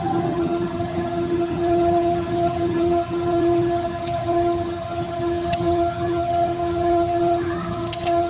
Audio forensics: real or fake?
fake